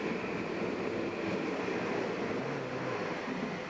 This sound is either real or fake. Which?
real